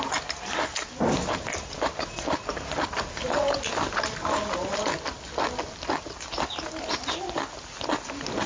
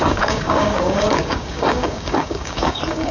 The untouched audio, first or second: first